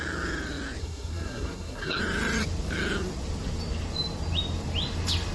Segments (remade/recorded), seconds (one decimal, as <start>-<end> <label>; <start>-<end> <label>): 0.0-0.8 recorded; 0.8-2.0 remade; 2.0-5.3 recorded